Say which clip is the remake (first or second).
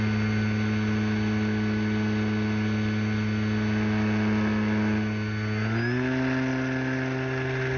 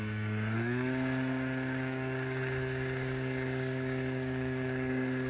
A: second